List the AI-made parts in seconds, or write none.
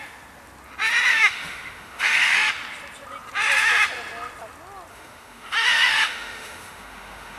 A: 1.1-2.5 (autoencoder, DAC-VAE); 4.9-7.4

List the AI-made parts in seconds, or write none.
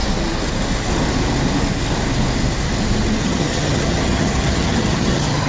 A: 3.2-5.5 (vocoder, HiFi-GAN)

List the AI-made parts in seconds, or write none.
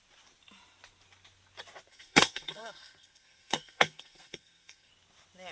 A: 1.9-4.9 (codec, SNAC)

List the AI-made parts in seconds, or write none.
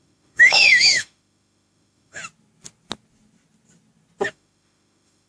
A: 0.0-2.2 (autoencoder, DAC-VAE); 4.3-5.3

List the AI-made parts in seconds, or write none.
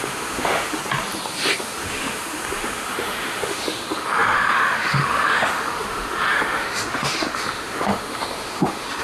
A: 0.0-0.8 (autoencoder, DAC-VAE); 1.6-9.0